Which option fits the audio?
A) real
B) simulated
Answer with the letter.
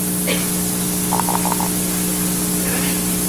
A